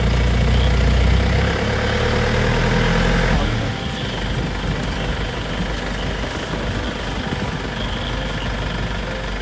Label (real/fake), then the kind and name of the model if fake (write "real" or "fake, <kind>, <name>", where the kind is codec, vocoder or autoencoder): real